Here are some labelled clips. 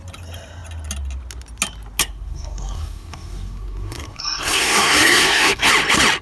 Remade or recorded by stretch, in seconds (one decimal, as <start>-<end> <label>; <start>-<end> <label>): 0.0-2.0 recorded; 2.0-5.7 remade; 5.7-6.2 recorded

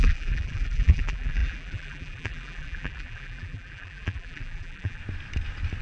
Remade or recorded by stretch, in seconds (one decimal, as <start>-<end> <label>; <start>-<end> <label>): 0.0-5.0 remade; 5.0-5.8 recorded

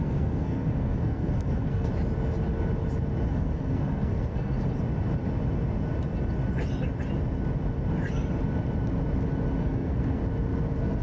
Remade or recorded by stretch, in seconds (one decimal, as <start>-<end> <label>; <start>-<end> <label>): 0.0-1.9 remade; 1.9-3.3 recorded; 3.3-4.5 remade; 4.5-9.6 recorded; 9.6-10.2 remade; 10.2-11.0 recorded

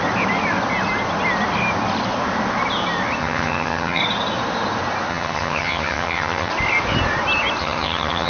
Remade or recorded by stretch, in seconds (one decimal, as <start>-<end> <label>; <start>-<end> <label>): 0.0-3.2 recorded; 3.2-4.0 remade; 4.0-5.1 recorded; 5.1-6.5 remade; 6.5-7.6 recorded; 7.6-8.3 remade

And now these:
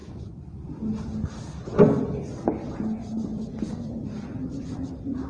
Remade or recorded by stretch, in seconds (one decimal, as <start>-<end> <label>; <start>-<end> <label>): 0.0-5.3 recorded

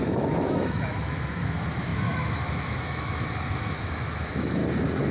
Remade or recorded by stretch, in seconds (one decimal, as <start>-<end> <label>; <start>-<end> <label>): 0.0-4.6 remade; 4.6-5.1 recorded